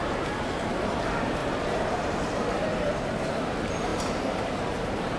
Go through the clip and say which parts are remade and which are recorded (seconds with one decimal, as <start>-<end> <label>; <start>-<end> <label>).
0.0-5.2 remade